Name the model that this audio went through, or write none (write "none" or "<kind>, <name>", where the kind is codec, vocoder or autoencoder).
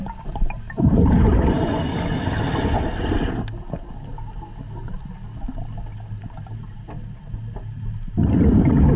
none